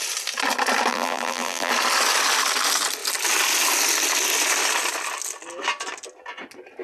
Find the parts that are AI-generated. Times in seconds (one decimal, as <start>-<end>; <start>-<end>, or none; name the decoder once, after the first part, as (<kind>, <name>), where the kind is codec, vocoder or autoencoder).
0.9-1.7 (vocoder, BigVGAN v2)